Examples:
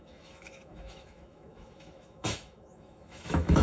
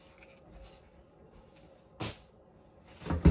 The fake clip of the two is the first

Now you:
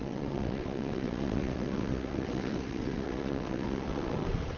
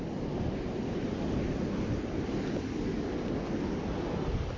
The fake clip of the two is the first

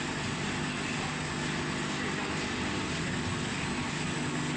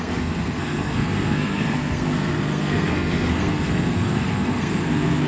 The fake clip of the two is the second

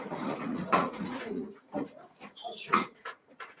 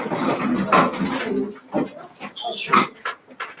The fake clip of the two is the first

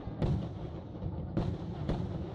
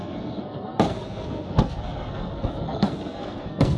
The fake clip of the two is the second